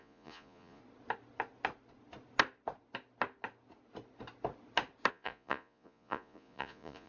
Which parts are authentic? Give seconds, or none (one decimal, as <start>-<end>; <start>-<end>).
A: 0.8-5.1